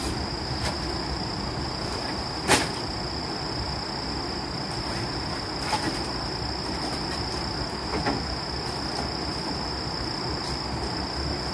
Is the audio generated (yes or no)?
no